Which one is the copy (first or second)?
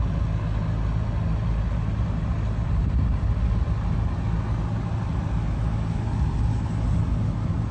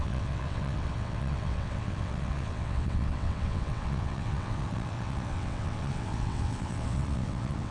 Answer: second